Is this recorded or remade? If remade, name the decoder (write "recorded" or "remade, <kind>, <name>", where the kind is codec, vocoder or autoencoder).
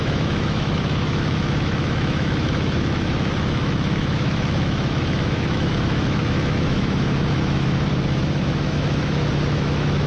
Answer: remade, autoencoder, DAC-VAE